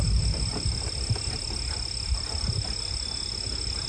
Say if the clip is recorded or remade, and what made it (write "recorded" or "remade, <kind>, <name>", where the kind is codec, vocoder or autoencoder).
recorded